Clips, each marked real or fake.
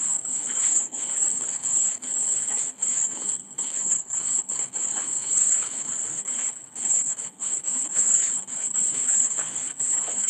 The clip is fake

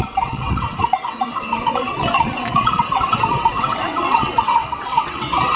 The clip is fake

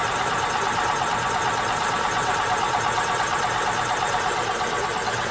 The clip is real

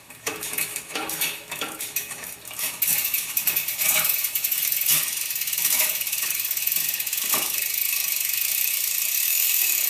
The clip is fake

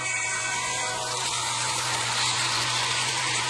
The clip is fake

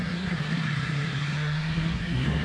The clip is fake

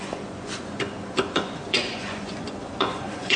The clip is fake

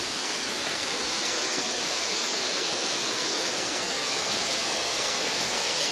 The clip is fake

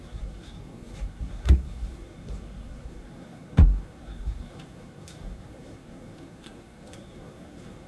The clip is fake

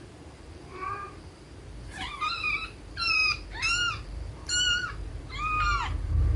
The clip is fake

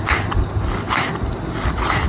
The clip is real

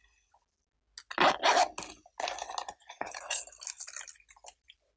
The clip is real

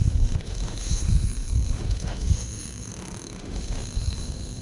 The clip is fake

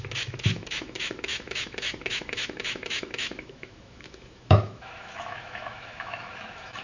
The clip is fake